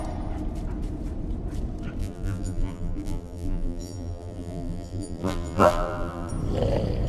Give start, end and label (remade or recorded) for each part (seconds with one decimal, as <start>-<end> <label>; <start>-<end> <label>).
0.0-2.0 recorded; 2.0-6.3 remade; 6.3-7.1 recorded